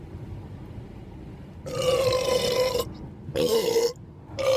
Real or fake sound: real